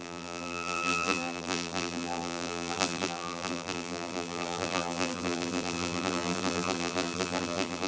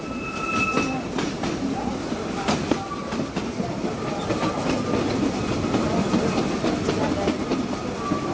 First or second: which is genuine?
second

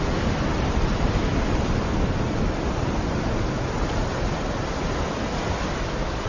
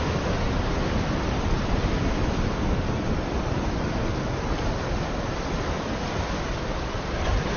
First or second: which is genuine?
first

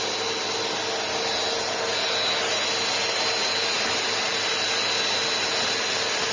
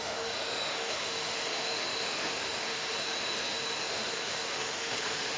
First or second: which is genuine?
first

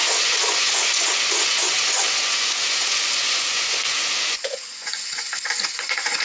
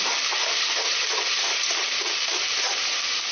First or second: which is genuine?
second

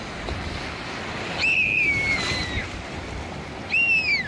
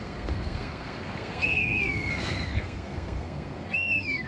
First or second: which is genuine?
first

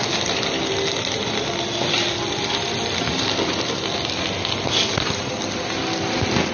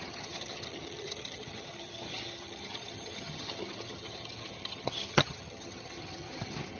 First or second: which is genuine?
first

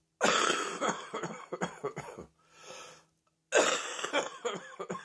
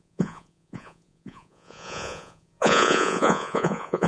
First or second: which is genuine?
first